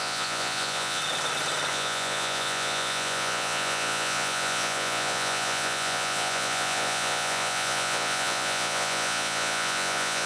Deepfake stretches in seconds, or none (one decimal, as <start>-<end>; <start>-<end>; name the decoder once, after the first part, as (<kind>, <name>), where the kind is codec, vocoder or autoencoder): 0.0-1.0 (vocoder, Vocos); 1.7-10.3